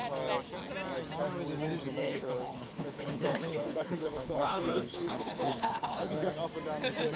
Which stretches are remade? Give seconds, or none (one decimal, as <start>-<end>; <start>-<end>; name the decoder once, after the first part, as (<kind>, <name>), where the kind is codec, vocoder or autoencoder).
2.0-6.3 (codec, HILCodec)